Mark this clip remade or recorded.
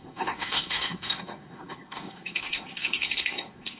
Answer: remade